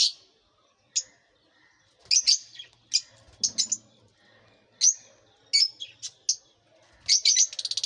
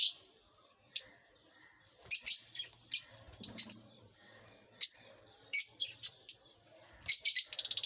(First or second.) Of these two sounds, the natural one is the first